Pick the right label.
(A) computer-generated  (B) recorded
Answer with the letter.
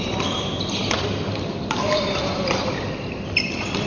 A